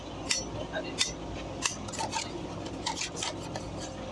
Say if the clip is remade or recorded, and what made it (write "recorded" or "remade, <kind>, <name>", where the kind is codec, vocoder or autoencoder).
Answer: recorded